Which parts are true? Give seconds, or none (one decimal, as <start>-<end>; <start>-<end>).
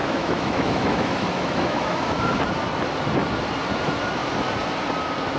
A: 2.4-5.4